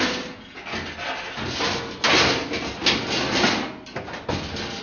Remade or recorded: recorded